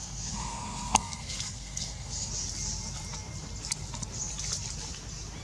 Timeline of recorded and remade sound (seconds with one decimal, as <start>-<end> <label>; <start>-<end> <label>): 0.0-2.3 remade; 2.3-5.4 recorded